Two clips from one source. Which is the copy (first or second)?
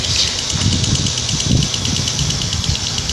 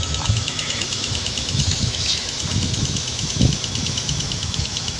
second